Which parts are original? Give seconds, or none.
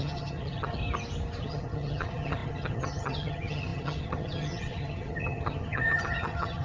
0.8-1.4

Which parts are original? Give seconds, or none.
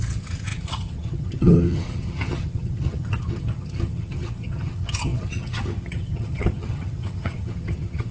none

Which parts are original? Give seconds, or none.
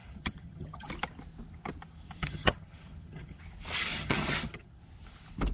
0.9-2.2; 3.4-3.9; 4.8-5.5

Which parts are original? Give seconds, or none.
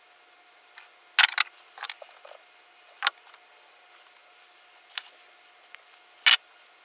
0.0-6.8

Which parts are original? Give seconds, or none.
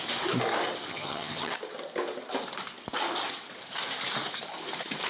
0.0-0.9; 1.5-5.1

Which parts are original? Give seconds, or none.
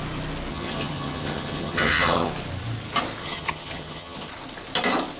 0.0-0.5; 2.3-3.2; 4.3-5.2